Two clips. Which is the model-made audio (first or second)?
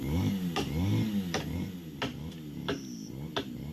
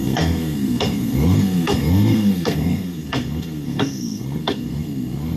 second